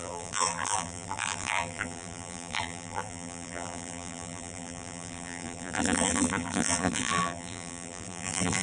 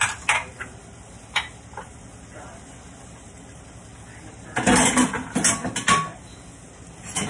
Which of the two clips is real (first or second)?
second